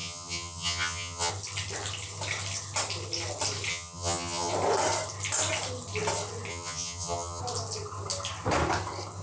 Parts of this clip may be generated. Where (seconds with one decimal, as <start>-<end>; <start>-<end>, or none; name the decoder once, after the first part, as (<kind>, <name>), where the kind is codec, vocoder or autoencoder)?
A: 0.0-1.3 (vocoder, HiFi-GAN); 3.7-4.5; 6.5-7.4